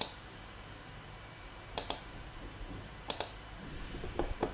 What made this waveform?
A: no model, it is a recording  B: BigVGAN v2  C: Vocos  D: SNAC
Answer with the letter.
B